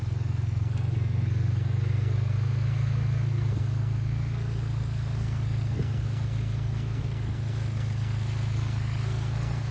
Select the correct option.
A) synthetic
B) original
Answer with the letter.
A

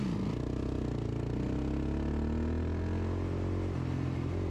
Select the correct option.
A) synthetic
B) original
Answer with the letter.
B